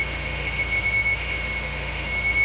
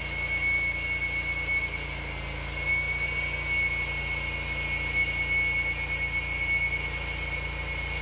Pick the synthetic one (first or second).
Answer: first